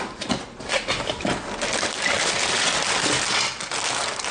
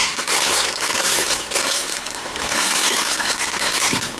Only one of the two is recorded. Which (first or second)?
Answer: first